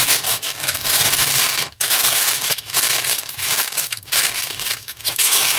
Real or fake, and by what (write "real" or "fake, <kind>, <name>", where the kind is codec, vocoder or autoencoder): fake, codec, DAC